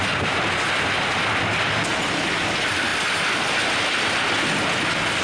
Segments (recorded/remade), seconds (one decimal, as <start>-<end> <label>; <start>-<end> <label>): 0.0-5.2 recorded